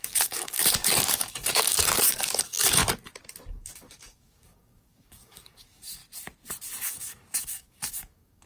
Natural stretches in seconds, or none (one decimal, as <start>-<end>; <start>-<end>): 2.8-3.5; 6.0-6.8